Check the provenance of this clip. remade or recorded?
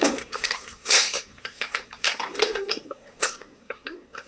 remade